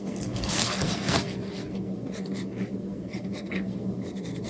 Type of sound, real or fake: fake